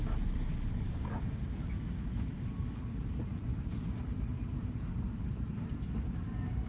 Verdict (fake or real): real